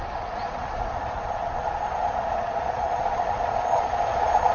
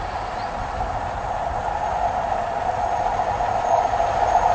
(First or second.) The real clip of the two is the second